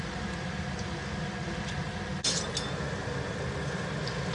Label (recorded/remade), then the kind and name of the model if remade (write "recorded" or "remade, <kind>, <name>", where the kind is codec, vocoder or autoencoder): recorded